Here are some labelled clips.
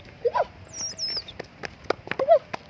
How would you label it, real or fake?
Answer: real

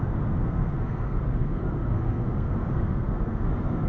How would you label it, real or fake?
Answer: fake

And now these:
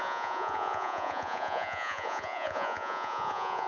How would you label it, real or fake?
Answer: fake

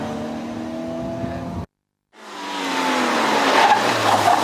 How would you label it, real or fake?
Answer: real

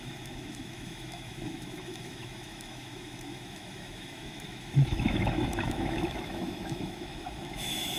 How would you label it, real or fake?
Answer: fake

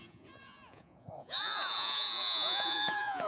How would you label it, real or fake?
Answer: fake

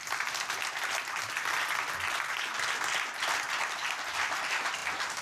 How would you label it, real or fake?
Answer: real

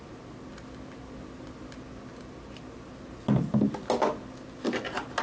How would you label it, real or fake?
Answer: real